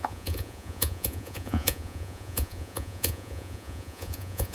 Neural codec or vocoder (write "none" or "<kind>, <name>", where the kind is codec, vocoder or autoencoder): vocoder, Vocos